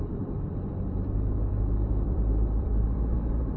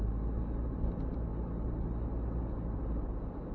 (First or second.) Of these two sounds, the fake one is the first